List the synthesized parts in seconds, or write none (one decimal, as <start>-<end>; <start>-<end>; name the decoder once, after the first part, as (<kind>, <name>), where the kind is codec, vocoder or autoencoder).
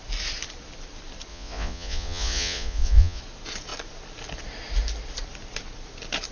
1.3-3.2 (vocoder, Vocos)